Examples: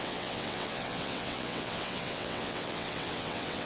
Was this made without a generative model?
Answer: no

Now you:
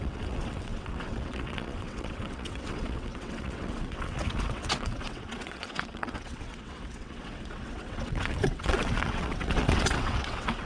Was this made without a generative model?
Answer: no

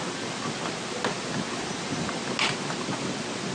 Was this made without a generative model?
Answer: yes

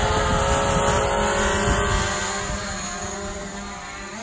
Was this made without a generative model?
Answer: yes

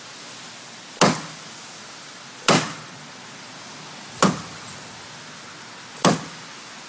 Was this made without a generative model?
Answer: yes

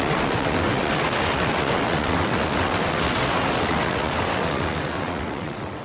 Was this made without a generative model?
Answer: no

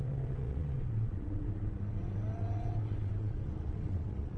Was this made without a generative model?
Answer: no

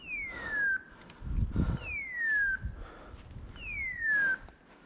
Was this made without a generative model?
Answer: yes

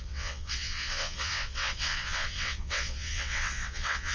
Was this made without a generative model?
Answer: no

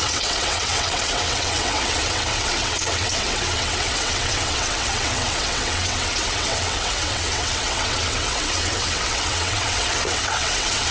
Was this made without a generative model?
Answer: no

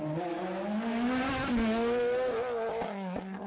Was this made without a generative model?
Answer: yes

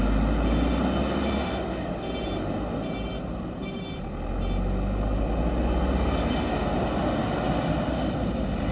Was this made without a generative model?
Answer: yes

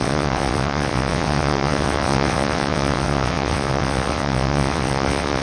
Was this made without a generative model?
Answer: no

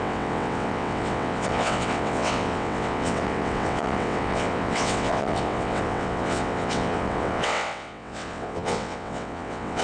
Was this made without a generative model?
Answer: no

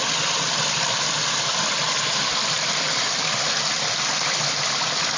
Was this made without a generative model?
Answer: yes